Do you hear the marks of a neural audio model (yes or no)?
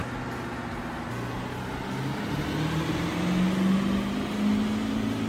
no